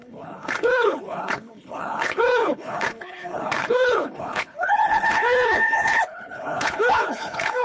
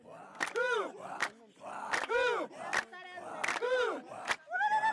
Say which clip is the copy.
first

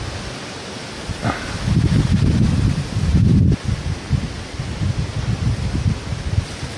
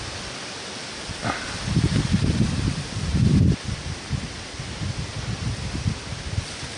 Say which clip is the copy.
second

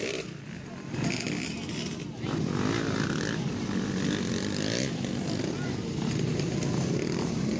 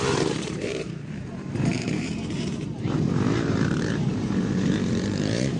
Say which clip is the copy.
second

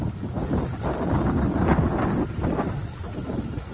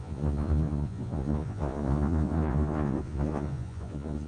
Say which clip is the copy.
second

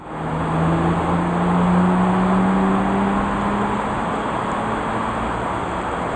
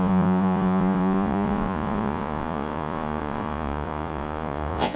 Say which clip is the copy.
second